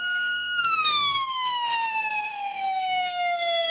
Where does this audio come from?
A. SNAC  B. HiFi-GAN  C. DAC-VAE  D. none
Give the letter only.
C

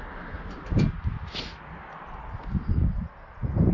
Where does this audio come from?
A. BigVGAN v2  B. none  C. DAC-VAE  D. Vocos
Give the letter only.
B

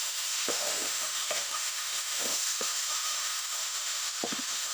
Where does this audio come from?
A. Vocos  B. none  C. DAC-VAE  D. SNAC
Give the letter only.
C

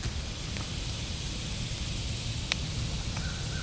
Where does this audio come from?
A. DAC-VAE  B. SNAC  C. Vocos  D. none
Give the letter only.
D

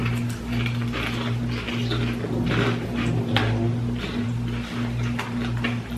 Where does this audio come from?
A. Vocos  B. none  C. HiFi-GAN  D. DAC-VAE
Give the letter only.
B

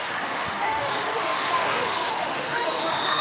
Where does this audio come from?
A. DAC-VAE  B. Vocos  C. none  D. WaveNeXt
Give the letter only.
A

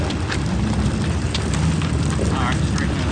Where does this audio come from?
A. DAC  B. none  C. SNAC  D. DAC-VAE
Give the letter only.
B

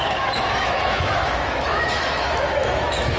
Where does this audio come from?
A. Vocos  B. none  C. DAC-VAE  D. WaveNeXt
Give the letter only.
C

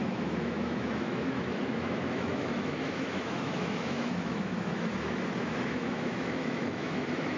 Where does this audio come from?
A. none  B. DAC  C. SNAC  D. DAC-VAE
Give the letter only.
D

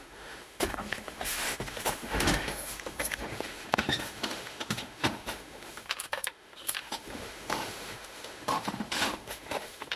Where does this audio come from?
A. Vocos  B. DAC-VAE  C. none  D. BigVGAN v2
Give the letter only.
B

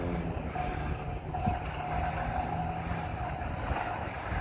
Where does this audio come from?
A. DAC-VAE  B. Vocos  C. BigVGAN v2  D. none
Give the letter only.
D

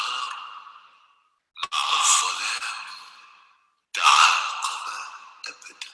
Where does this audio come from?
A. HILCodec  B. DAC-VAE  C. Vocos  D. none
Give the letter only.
D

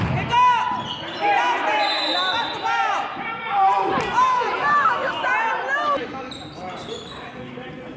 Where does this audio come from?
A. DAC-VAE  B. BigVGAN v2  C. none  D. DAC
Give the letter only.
C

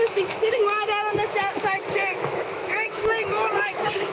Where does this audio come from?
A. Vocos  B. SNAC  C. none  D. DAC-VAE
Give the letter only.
D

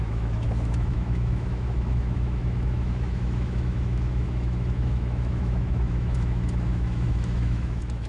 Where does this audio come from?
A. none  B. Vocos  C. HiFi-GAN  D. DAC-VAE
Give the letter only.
D